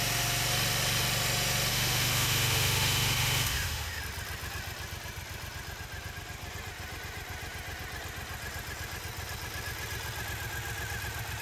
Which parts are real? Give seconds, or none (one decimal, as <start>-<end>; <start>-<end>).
0.0-1.7; 4.0-11.4